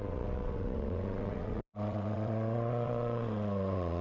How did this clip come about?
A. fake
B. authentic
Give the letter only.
A